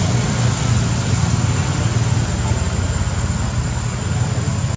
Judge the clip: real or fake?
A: real